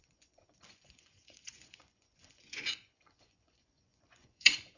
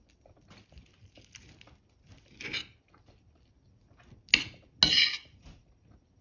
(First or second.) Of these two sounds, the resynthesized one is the first